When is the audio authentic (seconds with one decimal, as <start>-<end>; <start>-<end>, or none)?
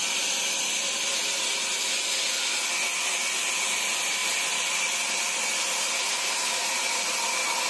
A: 0.0-7.7